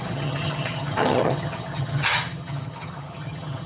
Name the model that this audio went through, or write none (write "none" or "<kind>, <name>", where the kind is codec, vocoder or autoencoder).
vocoder, HiFi-GAN